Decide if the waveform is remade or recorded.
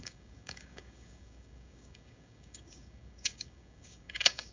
remade